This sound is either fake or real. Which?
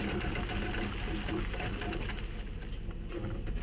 real